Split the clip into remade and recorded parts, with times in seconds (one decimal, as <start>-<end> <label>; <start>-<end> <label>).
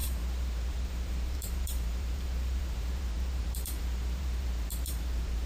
0.0-5.5 remade